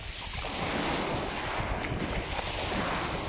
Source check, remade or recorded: recorded